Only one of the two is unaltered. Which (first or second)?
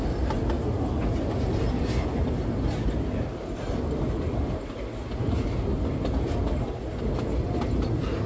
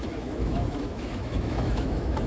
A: first